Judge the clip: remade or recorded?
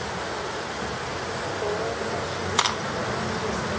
recorded